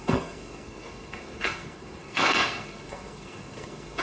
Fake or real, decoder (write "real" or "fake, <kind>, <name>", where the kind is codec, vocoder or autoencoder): fake, codec, SNAC